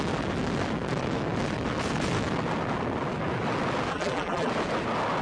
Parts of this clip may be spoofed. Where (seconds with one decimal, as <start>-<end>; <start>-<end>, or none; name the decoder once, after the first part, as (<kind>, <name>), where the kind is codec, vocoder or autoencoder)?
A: 3.9-4.5 (vocoder, BigVGAN v2)